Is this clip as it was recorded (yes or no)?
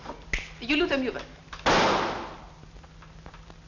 yes